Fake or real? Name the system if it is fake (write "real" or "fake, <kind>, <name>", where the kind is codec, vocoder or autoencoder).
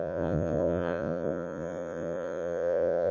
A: fake, vocoder, Vocos